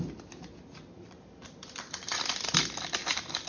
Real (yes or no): yes